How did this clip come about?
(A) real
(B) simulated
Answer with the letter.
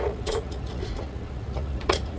B